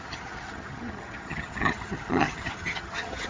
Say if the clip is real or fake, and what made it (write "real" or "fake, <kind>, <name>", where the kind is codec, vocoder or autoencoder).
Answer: fake, vocoder, HiFi-GAN